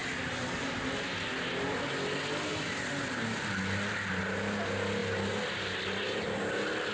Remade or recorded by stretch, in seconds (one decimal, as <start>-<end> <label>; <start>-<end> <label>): 0.0-6.9 recorded